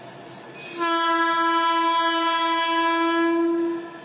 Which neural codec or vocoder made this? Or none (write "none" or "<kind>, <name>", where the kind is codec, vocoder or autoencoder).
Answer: none